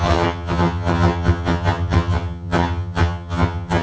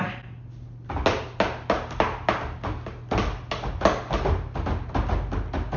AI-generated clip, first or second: first